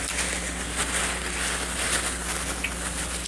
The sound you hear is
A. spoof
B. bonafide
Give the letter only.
B